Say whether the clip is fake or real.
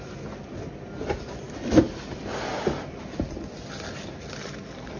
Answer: real